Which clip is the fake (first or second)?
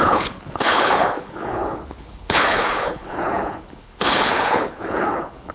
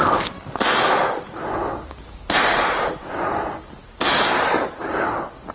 first